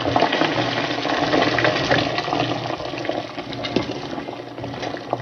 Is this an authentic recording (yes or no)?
yes